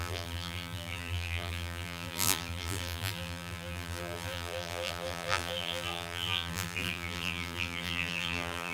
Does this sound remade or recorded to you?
remade